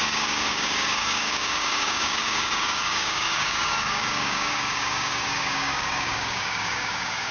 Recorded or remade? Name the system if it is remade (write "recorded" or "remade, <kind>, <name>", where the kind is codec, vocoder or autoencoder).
remade, codec, DAC